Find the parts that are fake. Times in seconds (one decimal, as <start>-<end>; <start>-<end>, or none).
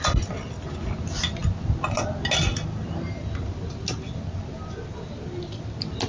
none